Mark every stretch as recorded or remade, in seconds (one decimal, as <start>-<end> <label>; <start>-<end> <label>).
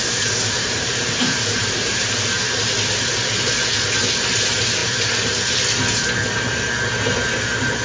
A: 0.0-2.3 remade; 2.3-7.8 recorded